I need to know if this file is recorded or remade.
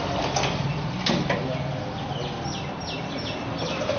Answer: recorded